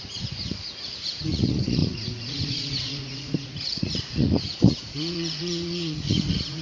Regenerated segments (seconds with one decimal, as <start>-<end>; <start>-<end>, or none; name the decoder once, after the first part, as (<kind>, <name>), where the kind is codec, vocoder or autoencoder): 0.0-6.6 (vocoder, Vocos)